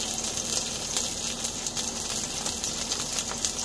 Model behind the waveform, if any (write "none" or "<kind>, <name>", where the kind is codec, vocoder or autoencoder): none